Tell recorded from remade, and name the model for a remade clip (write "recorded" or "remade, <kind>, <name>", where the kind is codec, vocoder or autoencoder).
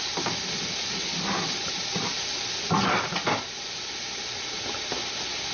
recorded